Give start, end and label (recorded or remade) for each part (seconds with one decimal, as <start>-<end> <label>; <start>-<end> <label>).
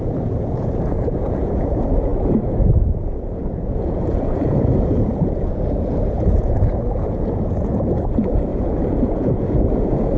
0.0-10.2 remade